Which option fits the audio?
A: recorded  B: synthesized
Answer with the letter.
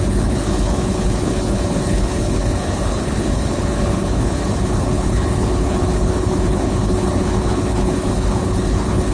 B